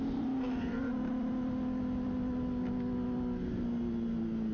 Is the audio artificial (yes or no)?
no